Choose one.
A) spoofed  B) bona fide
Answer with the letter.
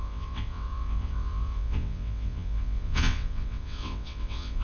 A